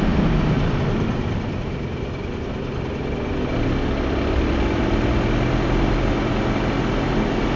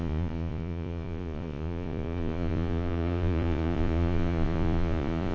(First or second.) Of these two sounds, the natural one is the first